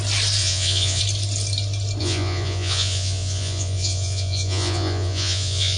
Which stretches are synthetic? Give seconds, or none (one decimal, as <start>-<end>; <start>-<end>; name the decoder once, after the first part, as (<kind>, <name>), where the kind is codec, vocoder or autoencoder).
0.4-1.0 (vocoder, Vocos); 2.0-5.8